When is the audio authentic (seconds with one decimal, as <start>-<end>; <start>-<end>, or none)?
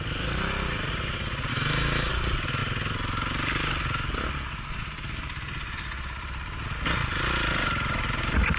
0.0-1.5; 2.1-8.6